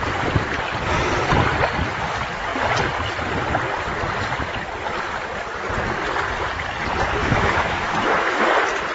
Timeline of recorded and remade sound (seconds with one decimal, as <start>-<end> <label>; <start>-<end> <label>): 0.0-7.2 recorded; 7.2-8.5 remade; 8.5-8.9 recorded